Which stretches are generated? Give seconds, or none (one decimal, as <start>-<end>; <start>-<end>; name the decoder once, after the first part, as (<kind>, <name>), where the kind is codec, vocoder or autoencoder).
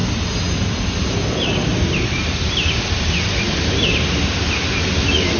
1.7-4.9 (vocoder, BigVGAN v2)